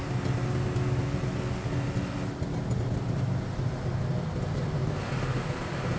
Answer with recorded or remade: recorded